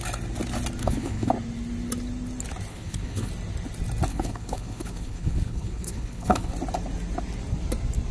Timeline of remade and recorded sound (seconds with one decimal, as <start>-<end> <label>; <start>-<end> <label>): 0.0-0.8 recorded; 0.8-1.3 remade; 1.3-2.7 recorded; 2.7-3.3 remade; 3.3-4.1 recorded; 4.1-6.5 remade; 6.5-8.1 recorded

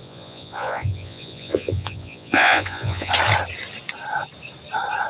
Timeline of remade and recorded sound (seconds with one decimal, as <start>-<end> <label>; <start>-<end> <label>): 0.0-3.1 remade; 3.1-5.1 recorded